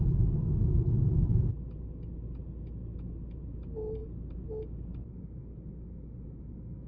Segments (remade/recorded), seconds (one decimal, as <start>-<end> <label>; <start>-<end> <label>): 0.0-6.9 recorded